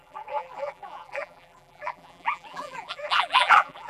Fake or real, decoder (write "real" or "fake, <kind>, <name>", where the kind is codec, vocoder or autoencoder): fake, vocoder, BigVGAN v2